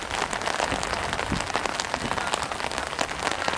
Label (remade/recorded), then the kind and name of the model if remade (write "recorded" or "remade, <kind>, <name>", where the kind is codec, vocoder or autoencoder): recorded